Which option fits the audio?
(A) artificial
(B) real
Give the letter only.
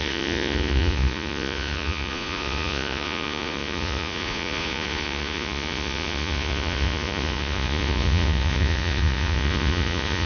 A